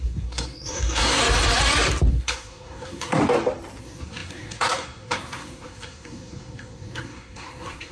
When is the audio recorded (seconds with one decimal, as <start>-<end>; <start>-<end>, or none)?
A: 1.2-2.1; 3.2-3.8